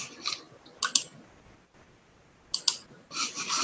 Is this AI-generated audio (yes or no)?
no